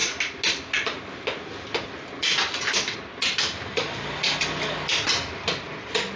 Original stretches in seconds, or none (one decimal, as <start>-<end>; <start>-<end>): 0.0-6.2